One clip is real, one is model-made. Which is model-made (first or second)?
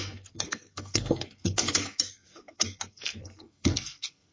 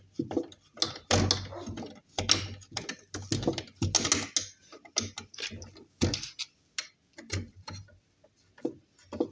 first